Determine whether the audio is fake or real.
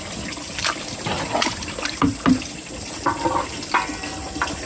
real